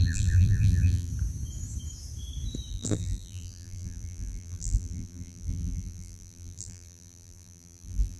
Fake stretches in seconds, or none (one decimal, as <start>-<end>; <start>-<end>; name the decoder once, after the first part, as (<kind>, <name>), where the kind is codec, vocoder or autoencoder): 0.0-1.1 (vocoder, BigVGAN v2); 2.7-8.2